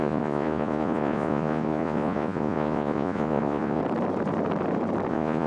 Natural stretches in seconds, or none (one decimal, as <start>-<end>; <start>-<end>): 3.8-5.1